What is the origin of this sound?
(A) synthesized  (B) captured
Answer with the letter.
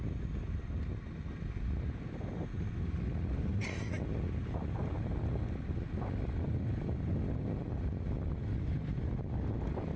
B